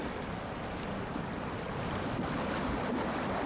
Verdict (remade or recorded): recorded